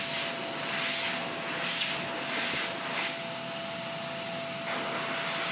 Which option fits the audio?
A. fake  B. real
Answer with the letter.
B